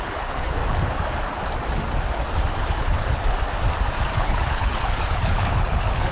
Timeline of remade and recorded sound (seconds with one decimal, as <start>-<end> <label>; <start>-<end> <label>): 0.0-0.6 remade; 0.6-2.8 recorded; 2.8-3.2 remade; 3.2-4.1 recorded; 4.1-6.1 remade